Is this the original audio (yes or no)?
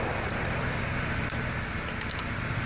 no